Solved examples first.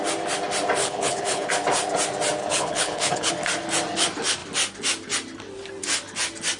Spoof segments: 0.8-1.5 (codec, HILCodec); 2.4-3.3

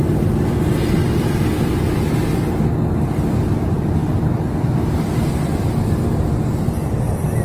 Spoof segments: 1.0-1.9 (vocoder, BigVGAN v2); 4.0-5.8

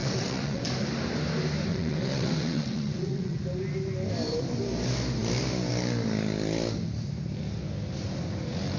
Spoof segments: 0.0-0.6 (vocoder, WaveNeXt); 1.7-3.4

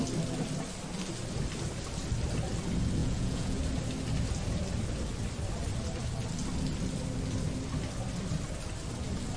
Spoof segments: 3.0-3.6 (vocoder, Vocos)

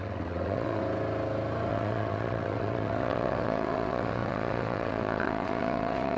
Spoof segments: 0.0-0.8 (vocoder, WaveNeXt); 1.7-6.2

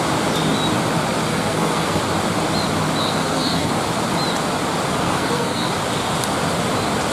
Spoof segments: 1.3-2.0 (codec, SNAC); 3.0-3.7; 4.9-5.7

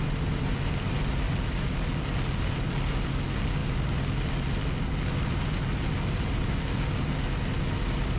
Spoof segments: none

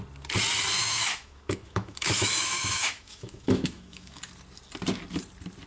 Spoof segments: 0.8-4.2 (autoencoder, DAC-VAE)